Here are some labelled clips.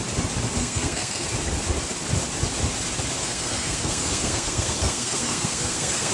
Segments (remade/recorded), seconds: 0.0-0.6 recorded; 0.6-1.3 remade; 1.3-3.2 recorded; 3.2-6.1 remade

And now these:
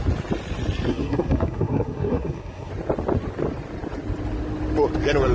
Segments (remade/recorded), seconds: 0.0-0.9 recorded; 0.9-2.7 remade; 2.7-5.3 recorded

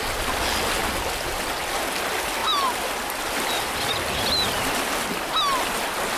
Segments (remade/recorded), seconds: 0.0-6.2 recorded

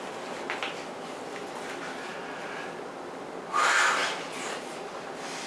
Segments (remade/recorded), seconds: 0.0-5.5 recorded

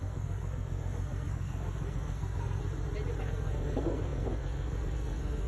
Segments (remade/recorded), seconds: 0.0-2.6 remade; 2.6-3.2 recorded; 3.2-5.5 remade

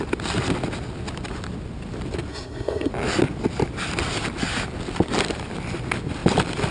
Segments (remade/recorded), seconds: 0.0-2.3 recorded; 2.3-2.9 remade; 2.9-6.7 recorded